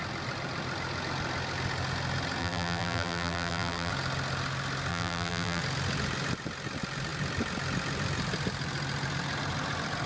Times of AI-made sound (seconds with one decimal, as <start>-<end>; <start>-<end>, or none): 2.4-3.9; 4.9-5.6